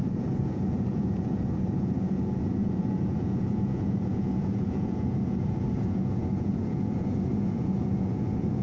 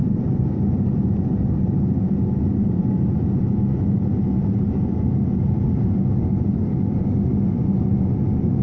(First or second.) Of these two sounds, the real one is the second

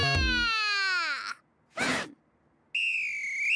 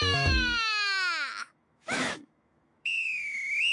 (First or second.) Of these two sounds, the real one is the first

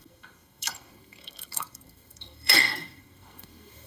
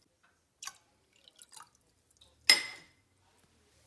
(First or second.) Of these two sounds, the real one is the second